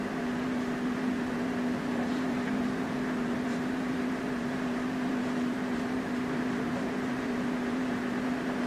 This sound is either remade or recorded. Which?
remade